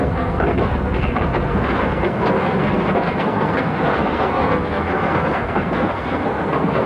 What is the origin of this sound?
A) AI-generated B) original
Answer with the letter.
A